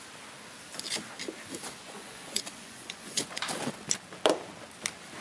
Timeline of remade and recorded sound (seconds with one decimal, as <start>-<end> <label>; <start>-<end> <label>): 0.0-1.8 recorded; 1.8-3.4 remade; 3.4-5.2 recorded